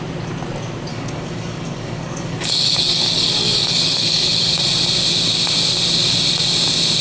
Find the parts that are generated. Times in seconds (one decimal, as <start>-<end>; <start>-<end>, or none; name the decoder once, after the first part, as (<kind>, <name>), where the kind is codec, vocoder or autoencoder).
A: 0.9-4.6 (codec, DAC)